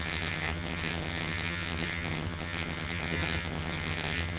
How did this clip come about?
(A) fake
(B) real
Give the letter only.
A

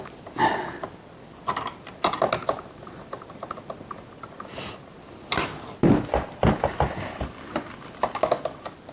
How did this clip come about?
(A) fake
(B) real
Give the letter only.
B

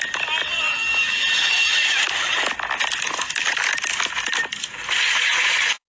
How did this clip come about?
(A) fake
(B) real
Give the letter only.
B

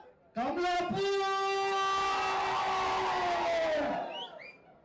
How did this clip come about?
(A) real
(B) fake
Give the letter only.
A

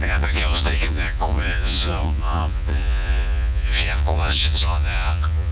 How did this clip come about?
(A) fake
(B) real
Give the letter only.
A